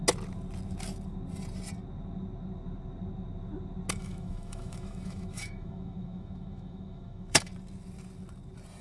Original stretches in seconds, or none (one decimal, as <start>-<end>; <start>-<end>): 0.0-3.9; 7.5-8.8

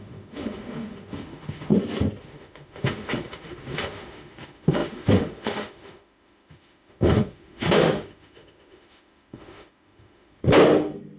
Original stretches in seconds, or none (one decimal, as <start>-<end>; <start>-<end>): 1.7-2.2; 10.4-11.2

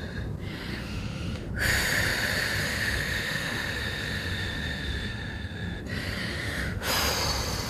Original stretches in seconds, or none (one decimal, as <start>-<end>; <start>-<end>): 0.0-0.7; 1.5-2.6; 5.8-6.2; 6.9-7.7

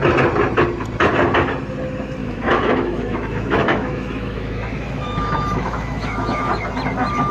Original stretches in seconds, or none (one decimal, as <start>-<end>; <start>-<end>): 0.0-2.2; 6.6-7.3

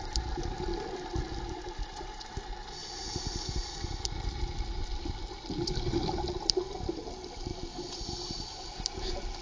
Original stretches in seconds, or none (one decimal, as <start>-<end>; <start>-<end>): 0.0-9.4